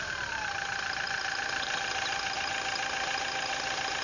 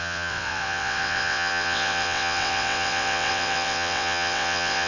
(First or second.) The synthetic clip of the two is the second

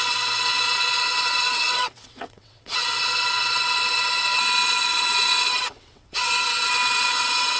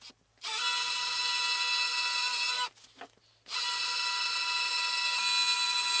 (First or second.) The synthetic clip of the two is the first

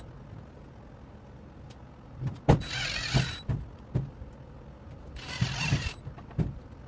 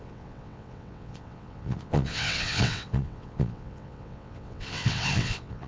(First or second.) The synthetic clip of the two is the second